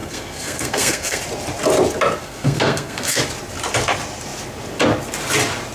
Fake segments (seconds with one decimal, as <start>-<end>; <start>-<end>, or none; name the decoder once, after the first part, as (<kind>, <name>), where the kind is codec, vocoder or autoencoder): 0.0-1.2 (codec, SNAC); 2.2-3.2